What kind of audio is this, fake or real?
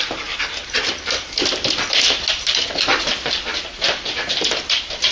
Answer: fake